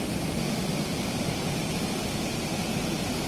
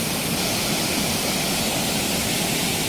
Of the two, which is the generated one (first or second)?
second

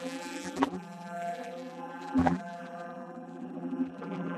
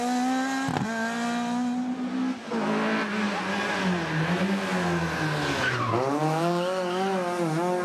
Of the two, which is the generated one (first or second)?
first